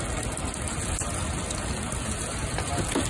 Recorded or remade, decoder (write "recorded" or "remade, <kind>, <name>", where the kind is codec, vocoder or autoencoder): recorded